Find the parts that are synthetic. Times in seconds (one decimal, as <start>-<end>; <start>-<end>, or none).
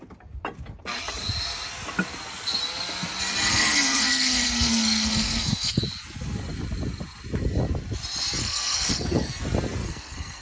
3.5-5.8; 8.4-9.4; 9.8-10.4